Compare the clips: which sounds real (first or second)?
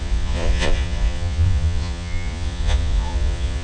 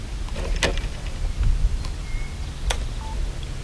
second